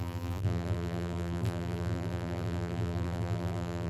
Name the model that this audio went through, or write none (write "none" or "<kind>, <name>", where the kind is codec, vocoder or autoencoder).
vocoder, BigVGAN v2